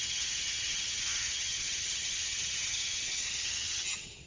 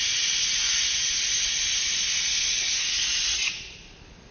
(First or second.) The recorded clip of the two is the second